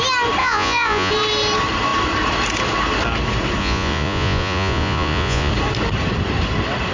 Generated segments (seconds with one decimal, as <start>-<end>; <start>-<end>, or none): 0.4-1.1; 3.6-5.5